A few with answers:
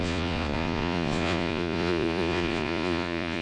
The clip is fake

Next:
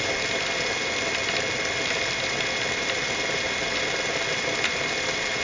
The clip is real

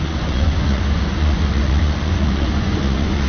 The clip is fake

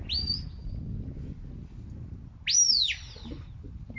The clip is real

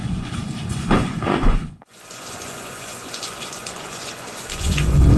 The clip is fake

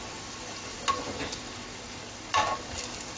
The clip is real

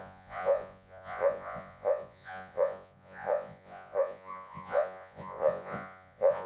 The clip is fake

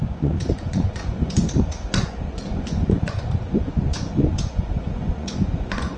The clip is fake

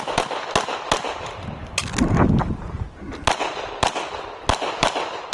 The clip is real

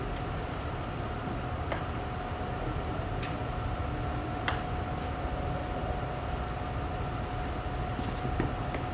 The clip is real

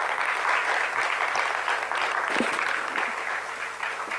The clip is real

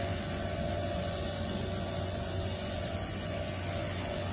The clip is fake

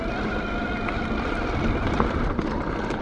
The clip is real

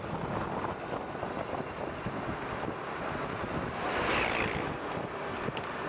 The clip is real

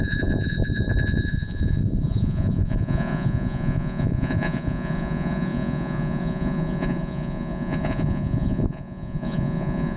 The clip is fake